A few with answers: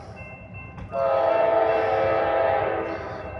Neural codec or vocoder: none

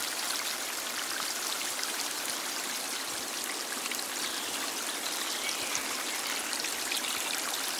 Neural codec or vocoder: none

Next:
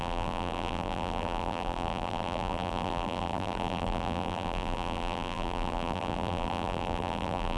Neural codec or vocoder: vocoder, BigVGAN v2